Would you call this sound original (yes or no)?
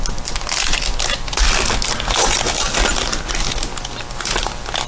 yes